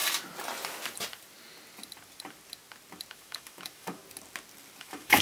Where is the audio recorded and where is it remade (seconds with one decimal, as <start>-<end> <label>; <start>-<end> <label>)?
0.0-3.1 recorded; 3.1-4.0 remade; 4.0-4.8 recorded; 4.8-5.2 remade